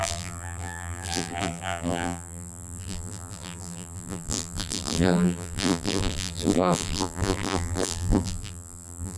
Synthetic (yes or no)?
yes